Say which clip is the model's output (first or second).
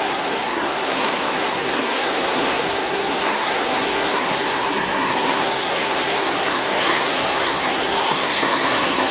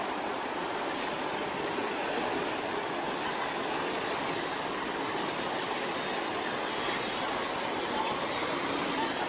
first